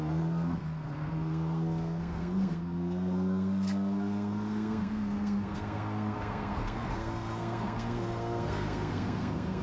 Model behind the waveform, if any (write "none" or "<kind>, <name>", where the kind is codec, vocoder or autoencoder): codec, SNAC